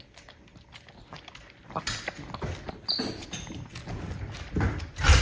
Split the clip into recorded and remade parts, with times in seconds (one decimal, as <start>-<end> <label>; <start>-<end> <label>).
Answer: 0.0-5.2 recorded